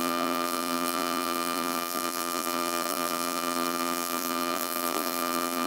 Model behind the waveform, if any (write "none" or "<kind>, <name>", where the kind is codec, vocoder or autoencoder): vocoder, BigVGAN v2